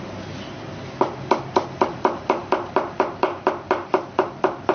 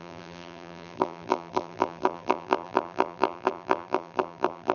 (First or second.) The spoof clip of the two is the second